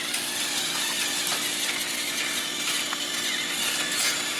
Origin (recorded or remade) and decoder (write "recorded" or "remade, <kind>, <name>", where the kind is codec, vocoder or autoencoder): recorded